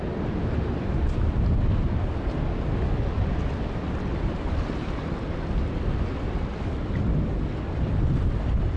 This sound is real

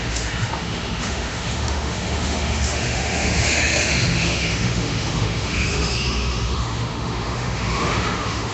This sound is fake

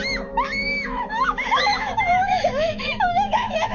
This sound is fake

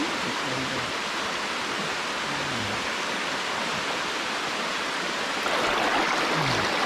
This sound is real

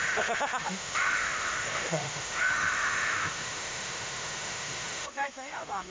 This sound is fake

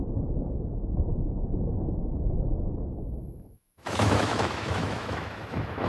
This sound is fake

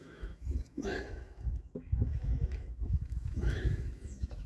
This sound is fake